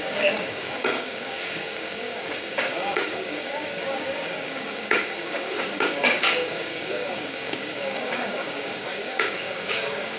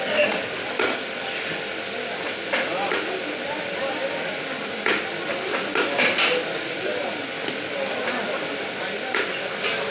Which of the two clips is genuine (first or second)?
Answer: second